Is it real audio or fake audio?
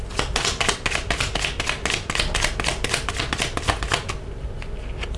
real